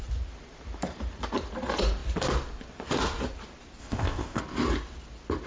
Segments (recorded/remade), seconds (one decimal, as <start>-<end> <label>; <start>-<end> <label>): 0.0-3.8 recorded; 3.8-4.4 remade; 4.4-5.5 recorded